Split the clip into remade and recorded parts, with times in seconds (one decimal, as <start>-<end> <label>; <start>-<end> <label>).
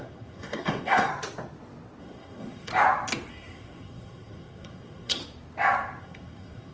0.0-1.1 remade; 1.1-2.0 recorded; 2.0-2.7 remade; 2.7-3.3 recorded; 3.3-5.2 remade; 5.2-6.0 recorded; 6.0-6.7 remade